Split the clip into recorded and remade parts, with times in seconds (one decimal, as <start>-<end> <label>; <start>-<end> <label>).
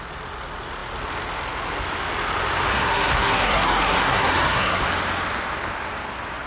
0.0-2.7 recorded; 2.7-4.8 remade; 4.8-6.5 recorded